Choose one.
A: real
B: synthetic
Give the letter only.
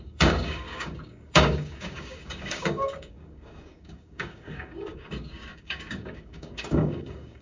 B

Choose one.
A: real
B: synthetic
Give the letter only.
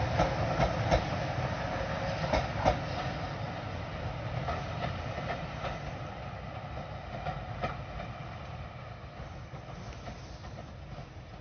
A